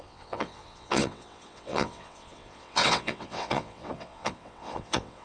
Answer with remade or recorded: remade